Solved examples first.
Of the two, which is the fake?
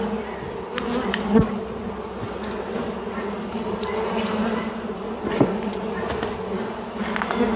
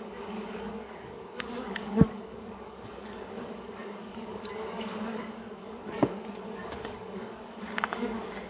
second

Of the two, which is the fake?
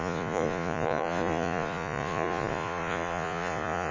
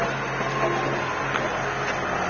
first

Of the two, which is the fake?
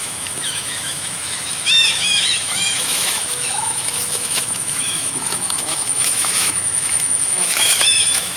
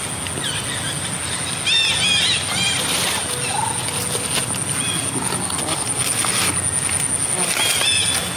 first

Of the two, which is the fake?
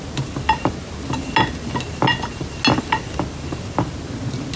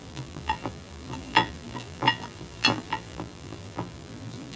second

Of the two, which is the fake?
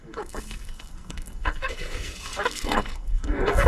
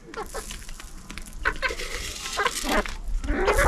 first